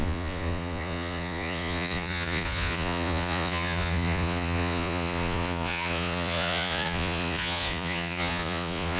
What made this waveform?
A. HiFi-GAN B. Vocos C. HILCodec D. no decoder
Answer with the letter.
B